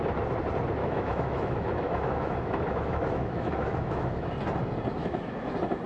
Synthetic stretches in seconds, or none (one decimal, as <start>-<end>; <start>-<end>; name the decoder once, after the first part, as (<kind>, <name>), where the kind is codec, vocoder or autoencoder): 0.8-4.3 (autoencoder, DAC-VAE); 5.0-5.5